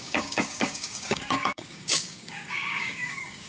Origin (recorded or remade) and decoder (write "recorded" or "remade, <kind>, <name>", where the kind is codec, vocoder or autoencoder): remade, codec, DAC